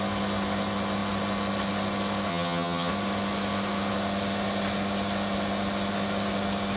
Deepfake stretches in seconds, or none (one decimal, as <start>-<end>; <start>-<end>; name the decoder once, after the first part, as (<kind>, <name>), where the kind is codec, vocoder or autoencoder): 2.3-2.9 (vocoder, HiFi-GAN)